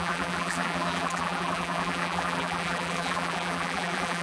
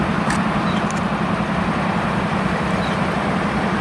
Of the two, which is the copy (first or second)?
first